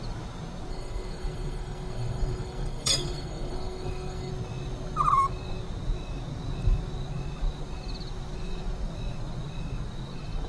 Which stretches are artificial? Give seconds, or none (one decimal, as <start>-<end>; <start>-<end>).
0.7-4.3